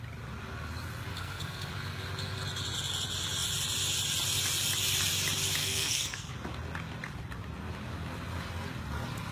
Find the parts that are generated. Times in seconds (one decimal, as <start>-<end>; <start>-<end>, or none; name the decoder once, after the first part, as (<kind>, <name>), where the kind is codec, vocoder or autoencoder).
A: 1.1-1.7 (codec, SNAC); 5.6-6.3